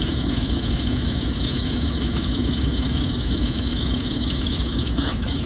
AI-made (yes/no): yes